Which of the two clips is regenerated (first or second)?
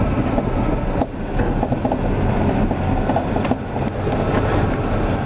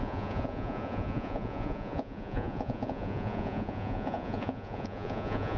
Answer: second